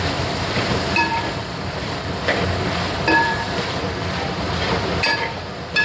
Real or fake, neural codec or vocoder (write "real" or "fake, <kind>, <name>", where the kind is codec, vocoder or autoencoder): fake, vocoder, BigVGAN v2